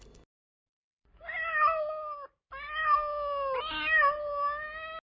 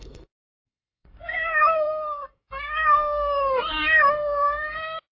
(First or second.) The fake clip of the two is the second